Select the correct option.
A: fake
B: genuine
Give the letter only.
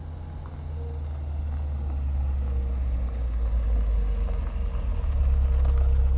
B